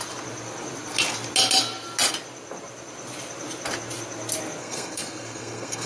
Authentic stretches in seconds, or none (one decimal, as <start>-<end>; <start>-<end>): 0.0-4.6